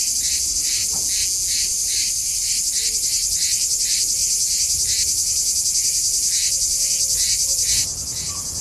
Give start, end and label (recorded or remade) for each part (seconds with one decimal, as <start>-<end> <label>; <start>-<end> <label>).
0.0-0.8 remade; 0.8-1.5 recorded; 1.5-4.2 remade; 4.2-8.6 recorded